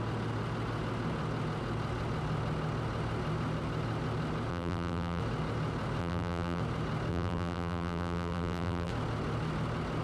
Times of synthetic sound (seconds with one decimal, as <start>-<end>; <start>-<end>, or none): 4.5-5.2; 6.0-6.6; 7.1-8.9